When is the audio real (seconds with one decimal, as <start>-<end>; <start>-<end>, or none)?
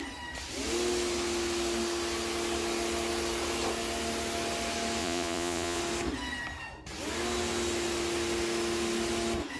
0.0-5.0; 5.8-9.6